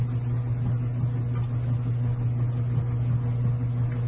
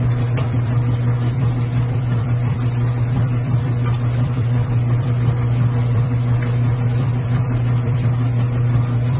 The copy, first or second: second